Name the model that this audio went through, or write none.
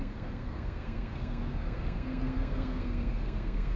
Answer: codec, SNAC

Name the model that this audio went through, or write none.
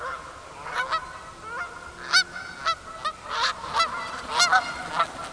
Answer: none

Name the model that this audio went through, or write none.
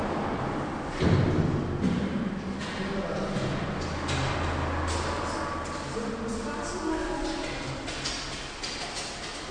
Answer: none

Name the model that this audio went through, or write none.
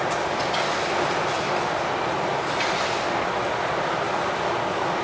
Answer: none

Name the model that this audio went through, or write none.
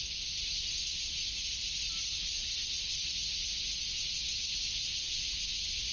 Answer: none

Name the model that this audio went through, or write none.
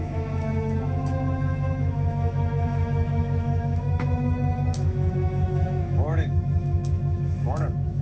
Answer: autoencoder, DAC-VAE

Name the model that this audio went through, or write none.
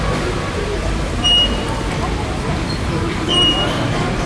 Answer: vocoder, BigVGAN v2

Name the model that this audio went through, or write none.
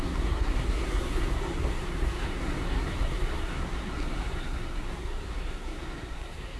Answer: codec, SNAC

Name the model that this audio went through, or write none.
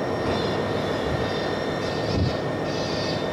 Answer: none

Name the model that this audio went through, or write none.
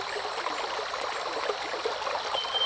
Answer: none